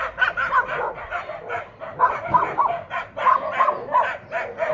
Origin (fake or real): real